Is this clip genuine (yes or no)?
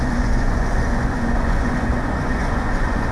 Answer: no